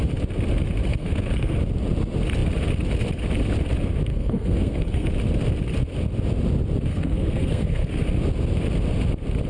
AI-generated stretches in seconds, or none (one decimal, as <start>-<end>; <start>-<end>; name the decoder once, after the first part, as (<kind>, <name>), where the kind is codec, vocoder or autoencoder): 0.9-1.5 (codec, SNAC); 4.1-5.1; 6.9-8.0